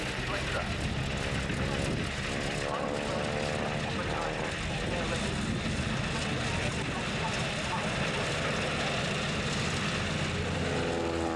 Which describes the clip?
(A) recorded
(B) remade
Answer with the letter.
A